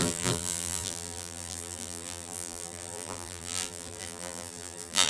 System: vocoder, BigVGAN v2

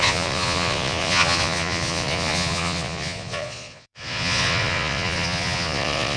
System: vocoder, Vocos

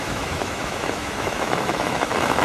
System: autoencoder, DAC-VAE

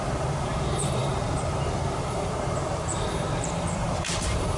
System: vocoder, BigVGAN v2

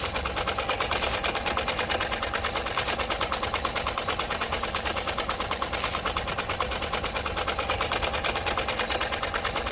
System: none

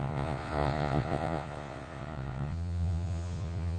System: vocoder, Vocos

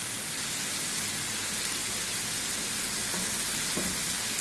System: none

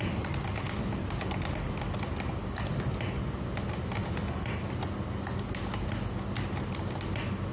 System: none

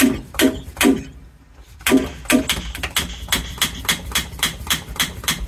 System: none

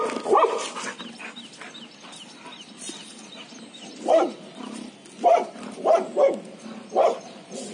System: none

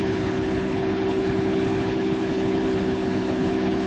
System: codec, HILCodec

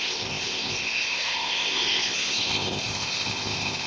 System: codec, ZipCodec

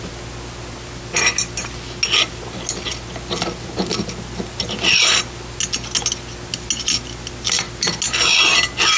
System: none